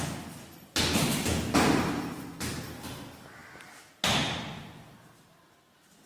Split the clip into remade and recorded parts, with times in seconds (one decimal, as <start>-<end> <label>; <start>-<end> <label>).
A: 0.0-6.1 recorded